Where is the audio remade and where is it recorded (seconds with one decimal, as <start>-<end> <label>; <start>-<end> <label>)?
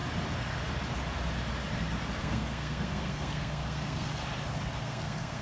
0.0-2.2 recorded; 2.2-4.2 remade; 4.2-4.8 recorded; 4.8-5.4 remade